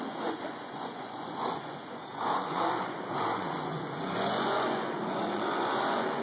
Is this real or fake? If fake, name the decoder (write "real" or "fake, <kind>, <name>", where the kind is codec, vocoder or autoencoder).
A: fake, vocoder, Vocos